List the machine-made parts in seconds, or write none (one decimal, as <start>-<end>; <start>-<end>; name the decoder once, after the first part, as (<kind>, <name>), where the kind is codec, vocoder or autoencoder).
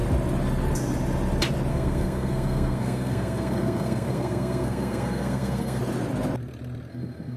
1.7-5.8 (codec, SNAC); 6.9-7.4